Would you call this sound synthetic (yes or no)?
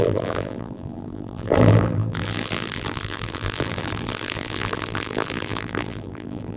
yes